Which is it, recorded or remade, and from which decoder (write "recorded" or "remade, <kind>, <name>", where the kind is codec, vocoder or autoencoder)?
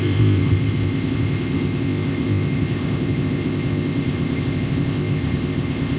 remade, codec, ZipCodec